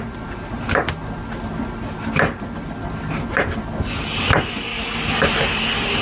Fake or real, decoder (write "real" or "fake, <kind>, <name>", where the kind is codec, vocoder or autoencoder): real